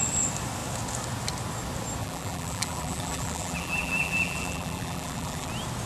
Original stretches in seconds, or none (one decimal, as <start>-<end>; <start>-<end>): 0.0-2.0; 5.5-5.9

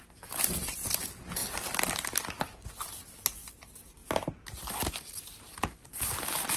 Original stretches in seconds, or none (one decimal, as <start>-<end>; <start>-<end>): 0.0-6.6

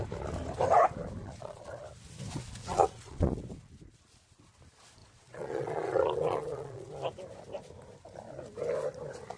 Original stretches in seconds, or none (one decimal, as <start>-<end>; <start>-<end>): 0.0-1.2; 1.7-2.6; 3.4-5.0; 6.9-9.4

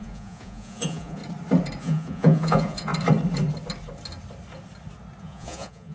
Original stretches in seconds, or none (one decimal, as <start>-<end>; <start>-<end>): 1.2-1.8; 2.9-5.2

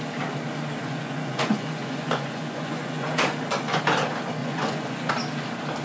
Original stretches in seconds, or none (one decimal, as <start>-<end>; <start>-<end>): 0.0-0.8; 3.2-4.4; 5.1-5.8

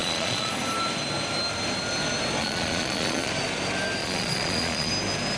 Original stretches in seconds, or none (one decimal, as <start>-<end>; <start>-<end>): 0.5-2.4; 3.3-4.0; 4.9-5.4

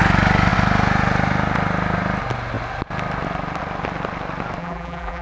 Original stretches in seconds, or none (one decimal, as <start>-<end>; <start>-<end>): 0.0-4.6